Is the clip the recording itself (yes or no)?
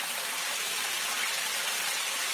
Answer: no